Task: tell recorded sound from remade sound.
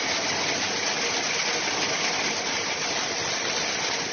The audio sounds recorded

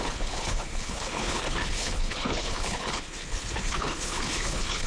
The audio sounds remade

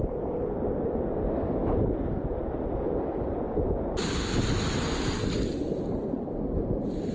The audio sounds recorded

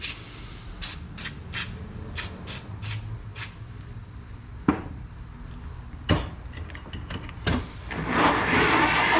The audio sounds recorded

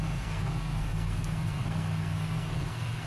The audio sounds remade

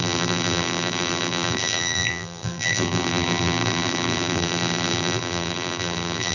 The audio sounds remade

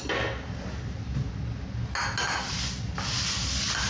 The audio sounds recorded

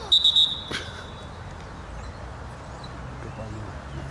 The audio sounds recorded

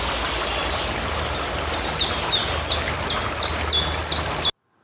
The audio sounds recorded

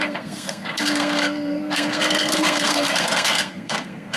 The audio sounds remade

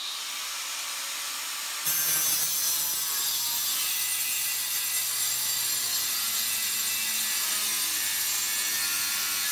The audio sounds recorded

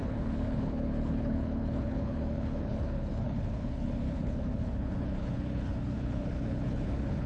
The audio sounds remade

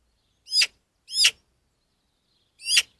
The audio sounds recorded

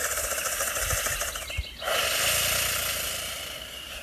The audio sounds recorded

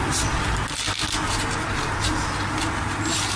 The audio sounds recorded